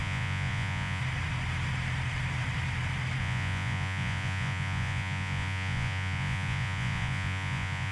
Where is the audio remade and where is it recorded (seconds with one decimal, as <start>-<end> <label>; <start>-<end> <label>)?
0.0-1.0 remade; 1.0-3.2 recorded; 3.2-7.9 remade